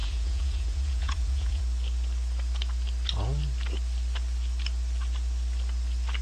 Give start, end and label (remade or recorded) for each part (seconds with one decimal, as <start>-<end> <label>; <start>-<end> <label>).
0.0-1.6 remade; 1.6-6.2 recorded